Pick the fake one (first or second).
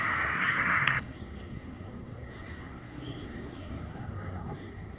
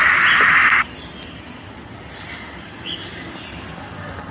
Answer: first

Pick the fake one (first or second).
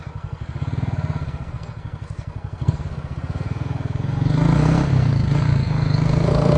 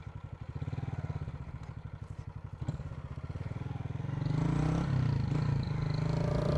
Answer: first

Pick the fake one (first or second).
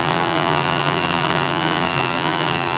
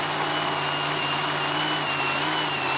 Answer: first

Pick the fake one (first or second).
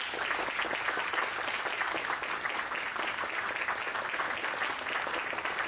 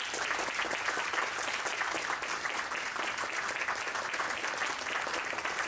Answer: second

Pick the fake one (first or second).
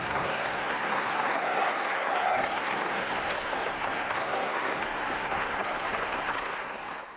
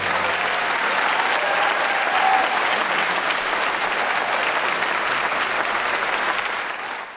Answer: first